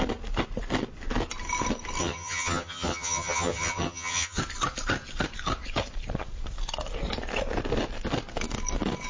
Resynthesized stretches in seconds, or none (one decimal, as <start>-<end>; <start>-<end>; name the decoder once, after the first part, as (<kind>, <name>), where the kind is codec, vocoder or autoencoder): 2.0-4.4 (vocoder, HiFi-GAN)